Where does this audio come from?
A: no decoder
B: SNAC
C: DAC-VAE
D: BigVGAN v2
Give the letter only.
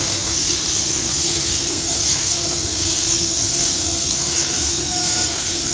B